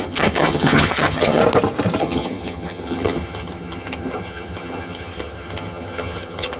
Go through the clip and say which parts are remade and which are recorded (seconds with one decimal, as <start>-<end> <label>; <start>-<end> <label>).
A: 0.0-1.4 remade; 1.4-2.0 recorded; 2.0-6.6 remade